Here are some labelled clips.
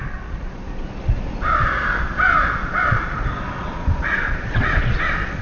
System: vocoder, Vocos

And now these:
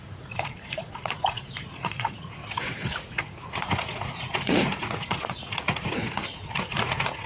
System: vocoder, Vocos